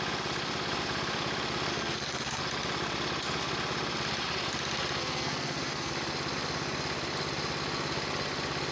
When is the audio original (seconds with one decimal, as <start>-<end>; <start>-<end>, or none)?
0.0-1.7; 2.4-5.0; 5.9-8.7